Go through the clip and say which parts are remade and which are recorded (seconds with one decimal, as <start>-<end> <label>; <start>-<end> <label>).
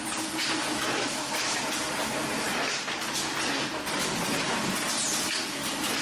0.0-0.7 recorded; 0.7-1.6 remade; 1.6-6.0 recorded